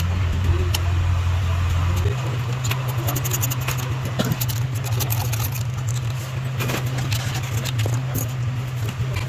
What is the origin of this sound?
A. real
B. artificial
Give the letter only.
A